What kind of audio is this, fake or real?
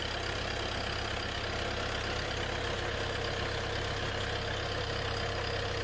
real